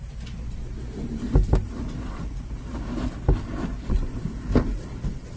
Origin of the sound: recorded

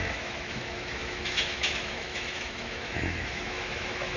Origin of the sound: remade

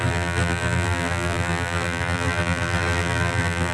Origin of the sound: remade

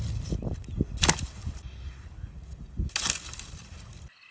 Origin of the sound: recorded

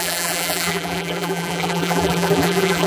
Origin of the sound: remade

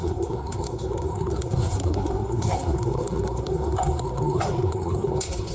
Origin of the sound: remade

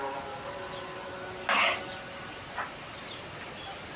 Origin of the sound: recorded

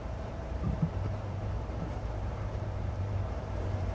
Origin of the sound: remade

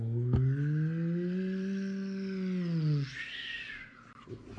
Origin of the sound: recorded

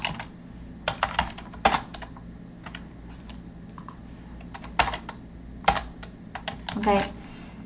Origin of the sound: recorded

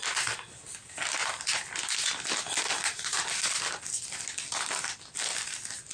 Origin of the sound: recorded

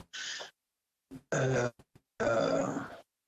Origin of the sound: recorded